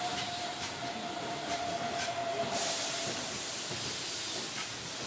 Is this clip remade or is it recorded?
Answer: recorded